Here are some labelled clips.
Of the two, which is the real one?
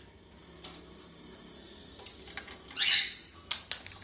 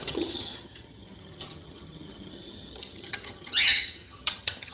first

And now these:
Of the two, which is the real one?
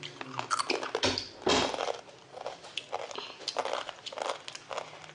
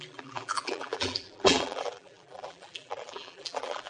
first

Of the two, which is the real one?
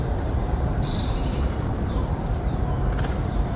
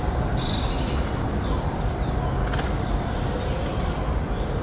second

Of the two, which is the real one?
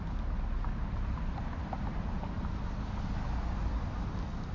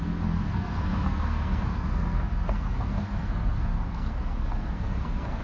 first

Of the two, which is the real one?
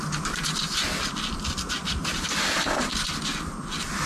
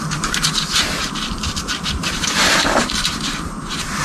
first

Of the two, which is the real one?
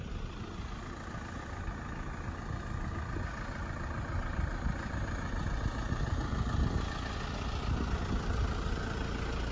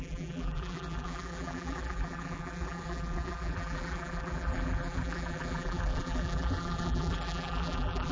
first